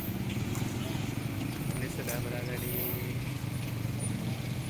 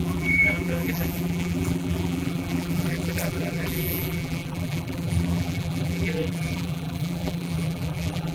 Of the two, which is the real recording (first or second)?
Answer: first